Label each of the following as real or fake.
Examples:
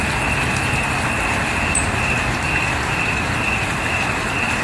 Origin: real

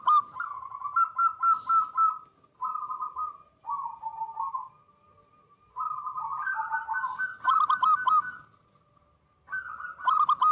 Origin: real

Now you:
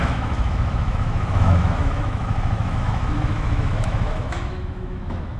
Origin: fake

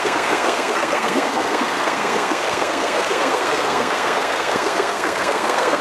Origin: fake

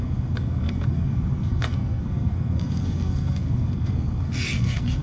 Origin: fake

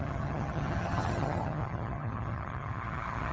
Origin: fake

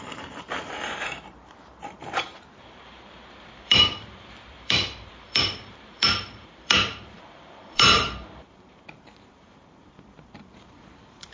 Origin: fake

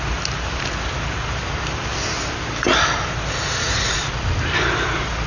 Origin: real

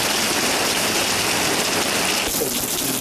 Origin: real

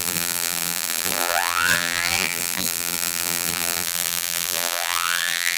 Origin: fake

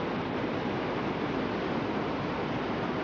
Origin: real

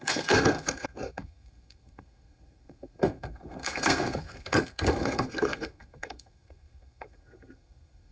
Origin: fake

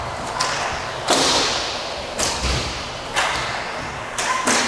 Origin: real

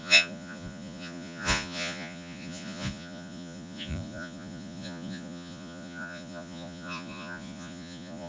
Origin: fake